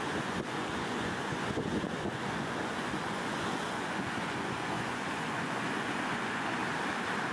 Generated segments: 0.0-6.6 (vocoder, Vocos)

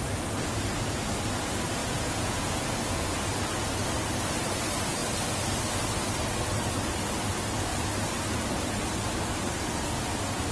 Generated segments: 1.8-3.2 (vocoder, Vocos)

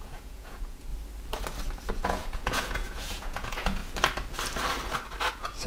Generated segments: 0.0-0.9 (vocoder, Vocos); 1.9-3.8; 5.3-5.7